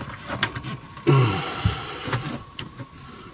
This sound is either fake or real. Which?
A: real